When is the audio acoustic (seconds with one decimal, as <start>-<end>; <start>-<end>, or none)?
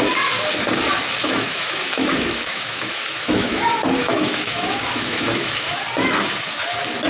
0.0-1.2; 3.6-4.0; 5.8-7.1